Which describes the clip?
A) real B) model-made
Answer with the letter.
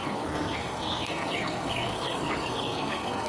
B